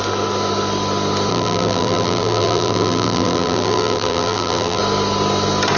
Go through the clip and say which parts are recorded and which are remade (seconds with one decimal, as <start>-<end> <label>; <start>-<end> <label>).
0.0-1.3 recorded; 1.3-4.8 remade; 4.8-5.8 recorded